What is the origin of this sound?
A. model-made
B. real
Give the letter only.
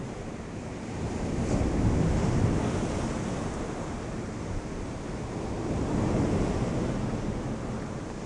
A